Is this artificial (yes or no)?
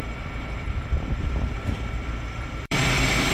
yes